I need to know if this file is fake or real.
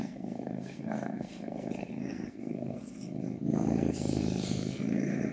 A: fake